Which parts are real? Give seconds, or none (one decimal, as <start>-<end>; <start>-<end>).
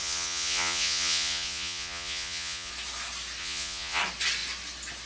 2.7-3.4; 4.0-5.1